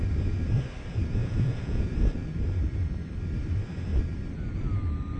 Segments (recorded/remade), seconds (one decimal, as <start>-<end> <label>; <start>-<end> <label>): 0.0-1.2 recorded; 1.2-1.9 remade; 1.9-5.2 recorded